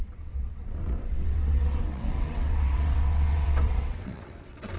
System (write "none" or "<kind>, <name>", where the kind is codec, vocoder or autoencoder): vocoder, WaveNeXt